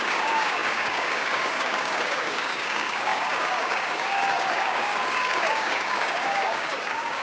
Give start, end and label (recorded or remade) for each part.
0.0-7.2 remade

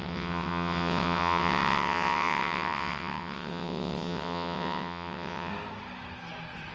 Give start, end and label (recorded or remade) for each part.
0.0-5.5 remade; 5.5-6.7 recorded